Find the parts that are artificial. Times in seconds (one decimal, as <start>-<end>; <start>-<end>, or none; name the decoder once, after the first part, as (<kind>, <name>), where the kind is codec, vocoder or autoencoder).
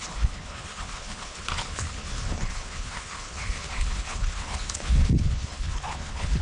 0.0-6.4 (codec, HILCodec)